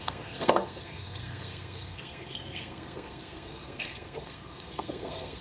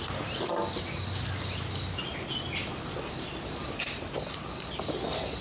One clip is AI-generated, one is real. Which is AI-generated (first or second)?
first